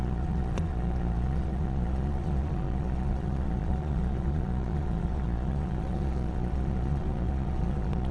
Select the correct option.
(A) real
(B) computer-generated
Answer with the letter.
B